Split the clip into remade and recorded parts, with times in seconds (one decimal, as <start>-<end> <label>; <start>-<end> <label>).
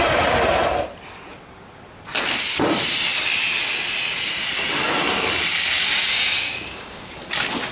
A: 0.0-6.0 recorded; 6.0-7.1 remade; 7.1-7.7 recorded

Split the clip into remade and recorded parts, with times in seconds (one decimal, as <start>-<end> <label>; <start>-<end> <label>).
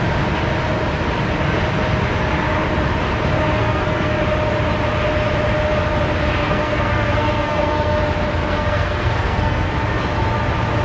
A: 0.0-3.5 recorded; 3.5-4.2 remade; 4.2-6.4 recorded; 6.4-8.0 remade; 8.0-8.4 recorded; 8.4-9.7 remade; 9.7-10.8 recorded